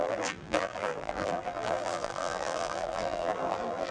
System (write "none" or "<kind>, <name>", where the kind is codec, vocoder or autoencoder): vocoder, BigVGAN v2